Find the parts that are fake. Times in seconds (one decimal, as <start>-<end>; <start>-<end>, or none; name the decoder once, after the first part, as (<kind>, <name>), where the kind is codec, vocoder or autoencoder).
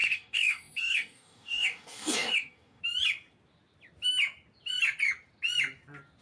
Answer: 0.0-2.8 (codec, DAC)